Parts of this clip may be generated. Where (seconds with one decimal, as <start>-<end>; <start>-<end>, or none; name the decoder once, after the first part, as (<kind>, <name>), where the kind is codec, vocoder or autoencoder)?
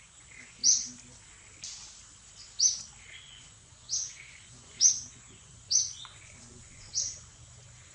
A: 0.0-0.6 (vocoder, Vocos); 3.2-7.9